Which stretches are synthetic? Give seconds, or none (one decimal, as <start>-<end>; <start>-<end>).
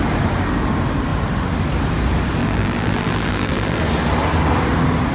2.4-3.8